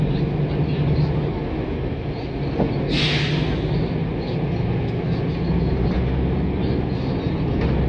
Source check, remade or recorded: recorded